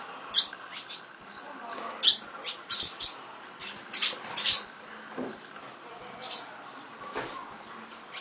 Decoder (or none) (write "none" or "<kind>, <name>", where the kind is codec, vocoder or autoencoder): none